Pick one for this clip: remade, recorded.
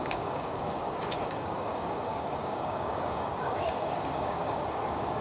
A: remade